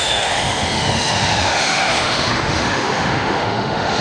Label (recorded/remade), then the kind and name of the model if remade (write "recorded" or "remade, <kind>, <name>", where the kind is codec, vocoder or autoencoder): remade, autoencoder, DAC-VAE